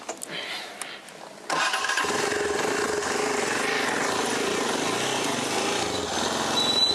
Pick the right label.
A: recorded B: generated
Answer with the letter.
A